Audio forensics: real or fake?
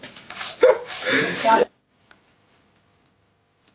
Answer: real